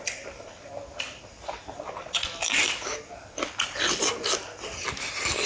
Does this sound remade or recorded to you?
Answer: recorded